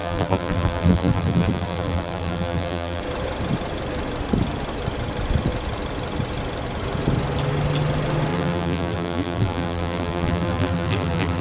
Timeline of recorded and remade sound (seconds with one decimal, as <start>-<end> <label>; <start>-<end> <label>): 0.0-3.0 remade; 3.0-8.3 recorded; 8.3-11.4 remade